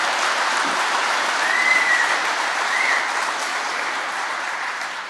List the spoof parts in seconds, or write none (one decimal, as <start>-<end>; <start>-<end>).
0.0-3.0; 3.5-5.1